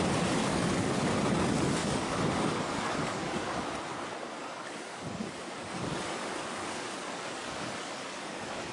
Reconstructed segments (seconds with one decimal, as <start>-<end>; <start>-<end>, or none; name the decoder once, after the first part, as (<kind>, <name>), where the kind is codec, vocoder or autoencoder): 0.4-0.9 (codec, DAC); 1.8-3.7; 4.4-8.7

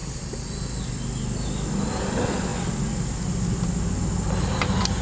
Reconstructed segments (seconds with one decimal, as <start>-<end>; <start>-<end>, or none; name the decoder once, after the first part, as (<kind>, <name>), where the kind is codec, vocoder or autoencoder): none

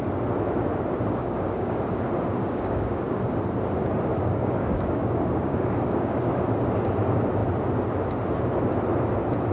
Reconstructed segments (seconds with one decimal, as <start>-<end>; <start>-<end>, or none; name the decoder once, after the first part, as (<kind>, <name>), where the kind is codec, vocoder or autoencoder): 1.2-1.8 (codec, DAC); 2.3-3.2; 4.1-6.4

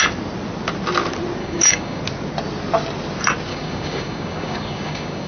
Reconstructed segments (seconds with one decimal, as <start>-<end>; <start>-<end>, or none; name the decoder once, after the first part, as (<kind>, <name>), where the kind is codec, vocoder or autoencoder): 1.4-2.0 (codec, DAC); 3.5-5.3

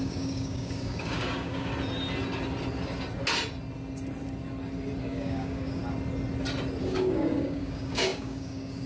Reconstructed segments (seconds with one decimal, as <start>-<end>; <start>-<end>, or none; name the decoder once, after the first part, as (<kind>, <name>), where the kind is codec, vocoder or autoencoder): 0.0-1.7 (codec, DAC); 5.0-5.8; 6.8-8.9

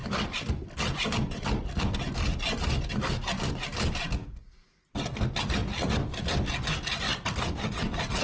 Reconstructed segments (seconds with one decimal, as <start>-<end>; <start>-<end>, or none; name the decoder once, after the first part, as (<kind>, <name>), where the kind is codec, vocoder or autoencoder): 4.2-4.8 (codec, DAC)

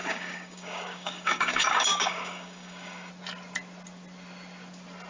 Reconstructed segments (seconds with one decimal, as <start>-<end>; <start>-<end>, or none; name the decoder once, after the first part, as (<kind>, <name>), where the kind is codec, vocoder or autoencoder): 0.0-3.1 (codec, DAC)

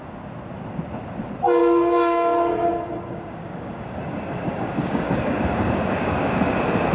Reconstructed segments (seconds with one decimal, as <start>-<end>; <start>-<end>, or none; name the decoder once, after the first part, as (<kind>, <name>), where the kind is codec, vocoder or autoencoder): 1.6-2.5 (codec, DAC); 3.1-6.3